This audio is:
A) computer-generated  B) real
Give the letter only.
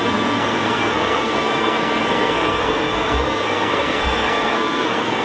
A